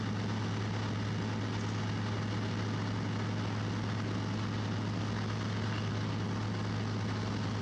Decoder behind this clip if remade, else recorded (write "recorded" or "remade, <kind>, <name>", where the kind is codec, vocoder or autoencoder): recorded